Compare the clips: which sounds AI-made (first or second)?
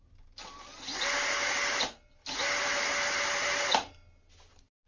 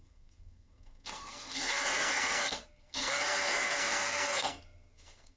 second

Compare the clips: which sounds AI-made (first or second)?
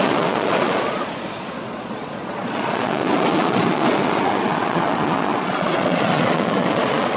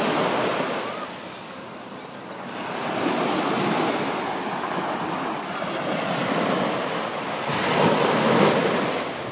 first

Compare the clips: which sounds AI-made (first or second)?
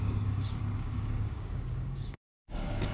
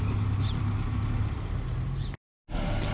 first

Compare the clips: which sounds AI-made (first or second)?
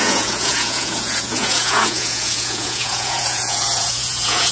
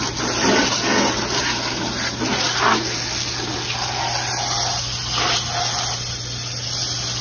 first